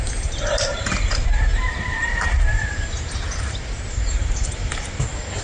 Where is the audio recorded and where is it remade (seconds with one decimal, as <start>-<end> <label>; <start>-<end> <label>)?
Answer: 0.0-1.5 recorded; 1.5-4.7 remade; 4.7-5.4 recorded